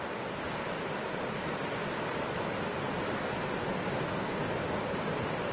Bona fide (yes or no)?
yes